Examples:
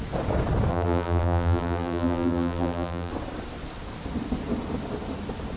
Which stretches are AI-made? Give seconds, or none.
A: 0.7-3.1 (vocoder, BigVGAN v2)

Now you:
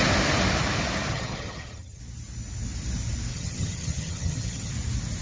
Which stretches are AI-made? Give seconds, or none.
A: 1.1-2.0 (vocoder, HiFi-GAN); 3.3-4.7

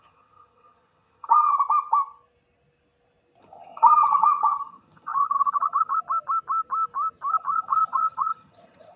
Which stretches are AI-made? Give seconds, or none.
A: 0.0-1.5 (vocoder, HiFi-GAN); 3.4-6.0; 7.3-9.0

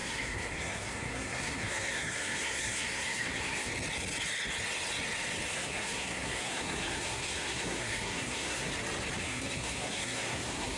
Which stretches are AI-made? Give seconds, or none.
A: 0.0-3.7 (codec, SNAC); 5.5-8.7; 9.2-10.8